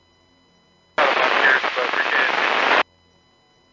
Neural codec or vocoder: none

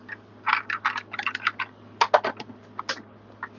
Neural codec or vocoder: none